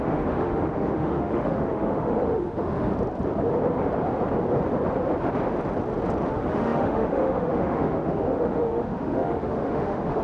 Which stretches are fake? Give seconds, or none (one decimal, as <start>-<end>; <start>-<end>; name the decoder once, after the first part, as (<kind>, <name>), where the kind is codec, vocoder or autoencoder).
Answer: 0.0-2.9 (autoencoder, DAC-VAE); 6.3-10.2